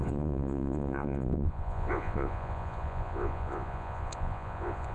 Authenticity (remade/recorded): remade